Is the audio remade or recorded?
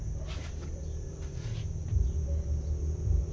recorded